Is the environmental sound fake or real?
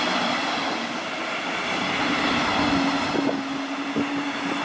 real